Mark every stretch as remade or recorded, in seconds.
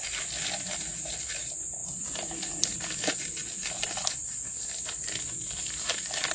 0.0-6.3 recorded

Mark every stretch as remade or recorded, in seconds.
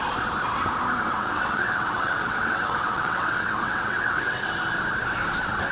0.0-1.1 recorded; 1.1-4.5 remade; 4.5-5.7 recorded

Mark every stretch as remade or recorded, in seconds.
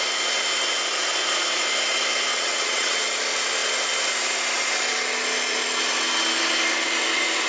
0.0-2.3 recorded; 2.3-3.0 remade; 3.0-7.5 recorded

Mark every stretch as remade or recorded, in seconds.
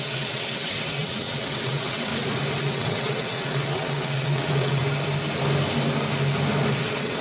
0.0-2.1 remade; 2.1-2.6 recorded; 2.6-4.8 remade; 4.8-6.8 recorded; 6.8-7.2 remade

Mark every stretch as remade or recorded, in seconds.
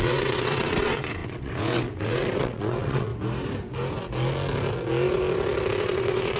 0.0-3.1 remade; 3.1-5.8 recorded; 5.8-6.4 remade